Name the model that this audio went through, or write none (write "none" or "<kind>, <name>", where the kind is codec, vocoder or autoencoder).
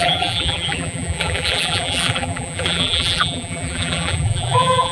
vocoder, BigVGAN v2